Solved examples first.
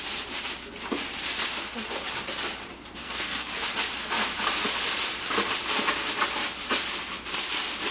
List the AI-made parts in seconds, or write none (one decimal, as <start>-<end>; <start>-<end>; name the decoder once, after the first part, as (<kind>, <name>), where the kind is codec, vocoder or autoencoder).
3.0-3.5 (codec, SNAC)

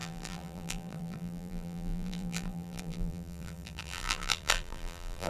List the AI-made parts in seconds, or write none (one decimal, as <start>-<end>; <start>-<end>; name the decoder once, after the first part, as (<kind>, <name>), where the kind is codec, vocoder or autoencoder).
0.0-5.3 (vocoder, BigVGAN v2)

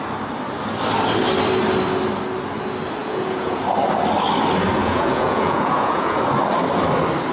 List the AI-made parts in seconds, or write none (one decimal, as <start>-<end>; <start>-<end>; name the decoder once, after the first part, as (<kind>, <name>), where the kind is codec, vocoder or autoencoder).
3.0-3.6 (vocoder, Vocos); 4.8-6.2